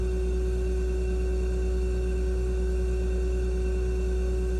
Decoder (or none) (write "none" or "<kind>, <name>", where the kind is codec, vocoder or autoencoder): none